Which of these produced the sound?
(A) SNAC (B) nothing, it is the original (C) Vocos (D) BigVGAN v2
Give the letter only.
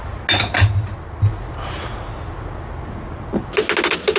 B